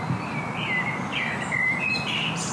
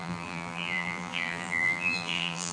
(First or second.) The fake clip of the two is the second